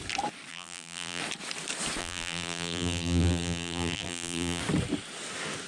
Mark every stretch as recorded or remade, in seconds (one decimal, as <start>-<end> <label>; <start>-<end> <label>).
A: 0.0-0.5 recorded; 0.5-1.2 remade; 1.2-2.0 recorded; 2.0-4.6 remade; 4.6-5.7 recorded